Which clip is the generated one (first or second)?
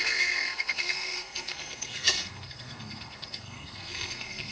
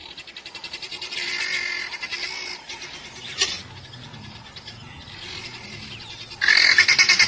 first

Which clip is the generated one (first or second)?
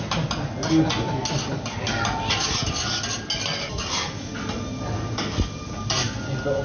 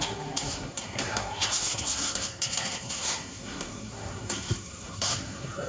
second